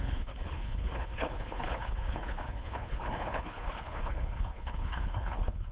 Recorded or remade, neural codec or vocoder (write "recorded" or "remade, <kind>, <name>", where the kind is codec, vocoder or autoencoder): remade, codec, HILCodec